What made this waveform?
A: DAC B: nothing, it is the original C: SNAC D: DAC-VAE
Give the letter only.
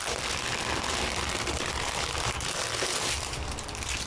B